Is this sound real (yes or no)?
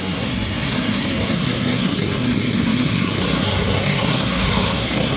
no